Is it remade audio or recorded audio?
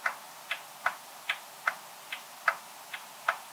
recorded